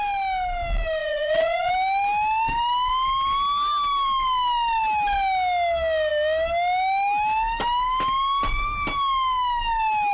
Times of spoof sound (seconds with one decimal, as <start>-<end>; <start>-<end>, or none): 1.0-1.7